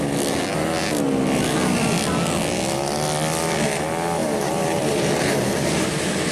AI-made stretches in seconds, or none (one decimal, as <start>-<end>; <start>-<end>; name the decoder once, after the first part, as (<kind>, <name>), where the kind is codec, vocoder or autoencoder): 4.2-6.3 (vocoder, BigVGAN v2)